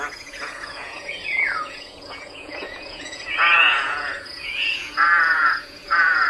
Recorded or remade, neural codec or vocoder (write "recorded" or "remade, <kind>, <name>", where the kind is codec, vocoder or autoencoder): remade, vocoder, Vocos